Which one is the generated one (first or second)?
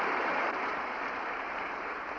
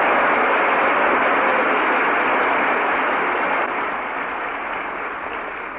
first